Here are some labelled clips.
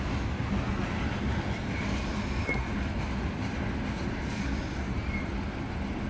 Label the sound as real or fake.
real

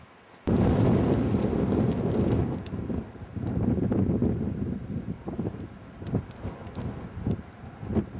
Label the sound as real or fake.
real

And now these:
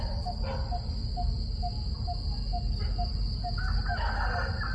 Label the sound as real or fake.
real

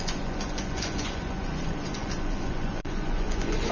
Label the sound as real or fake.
fake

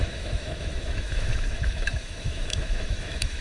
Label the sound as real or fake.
fake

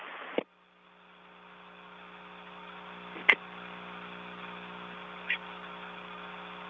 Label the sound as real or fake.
real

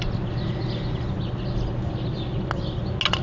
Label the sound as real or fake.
real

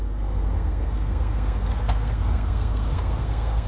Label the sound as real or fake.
fake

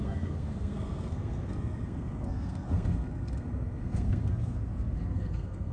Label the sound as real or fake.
fake